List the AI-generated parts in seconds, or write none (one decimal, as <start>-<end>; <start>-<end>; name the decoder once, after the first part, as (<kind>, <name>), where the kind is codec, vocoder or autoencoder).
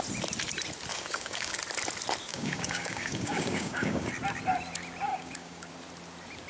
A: 0.9-1.6 (codec, DAC); 2.3-4.1; 5.1-5.7